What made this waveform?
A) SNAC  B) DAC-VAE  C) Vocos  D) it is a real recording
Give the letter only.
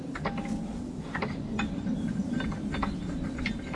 D